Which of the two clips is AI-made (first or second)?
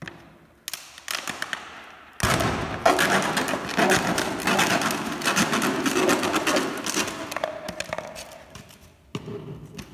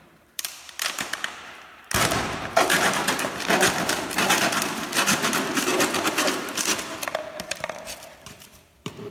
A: second